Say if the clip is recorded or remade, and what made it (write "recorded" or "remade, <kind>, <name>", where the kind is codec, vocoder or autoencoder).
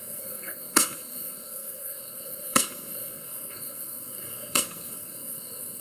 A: remade, codec, SNAC